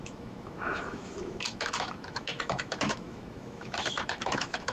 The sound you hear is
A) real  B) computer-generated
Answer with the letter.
B